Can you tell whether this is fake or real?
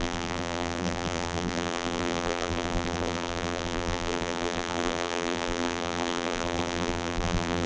fake